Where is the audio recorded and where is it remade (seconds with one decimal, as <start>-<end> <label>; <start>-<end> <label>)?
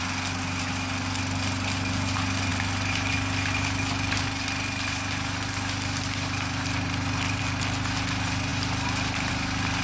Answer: 0.0-9.8 recorded